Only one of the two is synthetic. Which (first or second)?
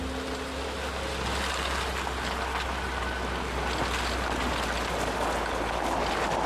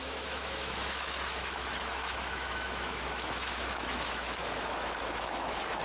second